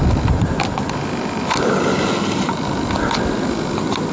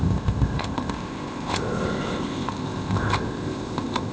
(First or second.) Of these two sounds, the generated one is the second